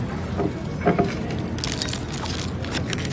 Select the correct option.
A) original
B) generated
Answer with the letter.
A